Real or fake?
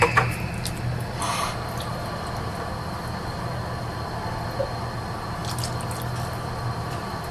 real